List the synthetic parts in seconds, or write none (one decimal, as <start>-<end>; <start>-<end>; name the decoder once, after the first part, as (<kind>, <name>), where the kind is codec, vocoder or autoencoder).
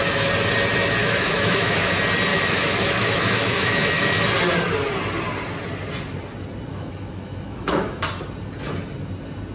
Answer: 1.0-1.9 (autoencoder, DAC-VAE); 2.3-4.2; 6.7-8.0